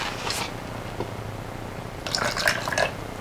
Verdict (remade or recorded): recorded